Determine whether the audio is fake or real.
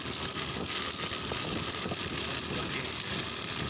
real